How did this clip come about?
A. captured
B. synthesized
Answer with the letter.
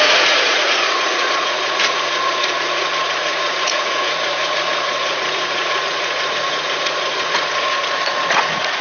B